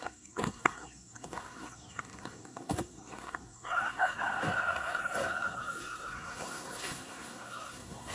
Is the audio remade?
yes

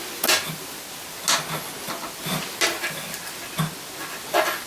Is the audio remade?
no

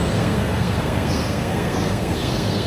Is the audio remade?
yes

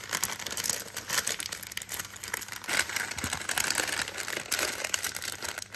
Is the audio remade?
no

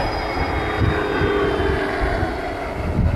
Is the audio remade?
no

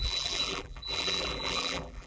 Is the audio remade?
yes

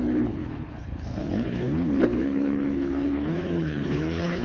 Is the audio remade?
yes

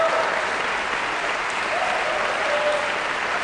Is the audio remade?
no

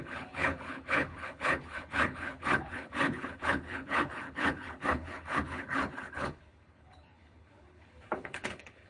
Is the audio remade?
yes